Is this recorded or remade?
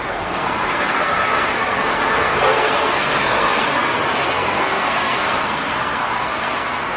remade